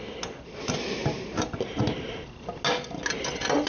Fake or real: real